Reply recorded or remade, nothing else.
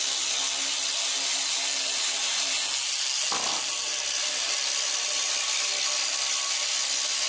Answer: recorded